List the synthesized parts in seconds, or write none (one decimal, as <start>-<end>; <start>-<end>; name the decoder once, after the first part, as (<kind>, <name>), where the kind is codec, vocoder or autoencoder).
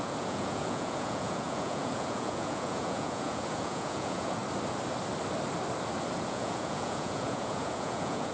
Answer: 0.0-4.4 (vocoder, Vocos); 6.2-8.3